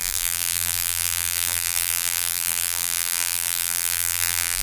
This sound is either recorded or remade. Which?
remade